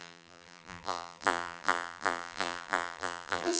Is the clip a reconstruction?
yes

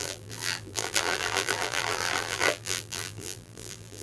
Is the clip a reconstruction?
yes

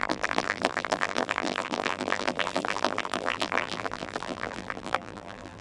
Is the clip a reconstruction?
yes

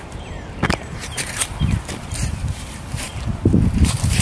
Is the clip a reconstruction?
yes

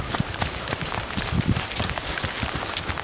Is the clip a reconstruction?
no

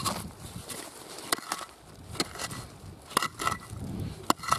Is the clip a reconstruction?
no